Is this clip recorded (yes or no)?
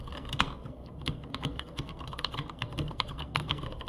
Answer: no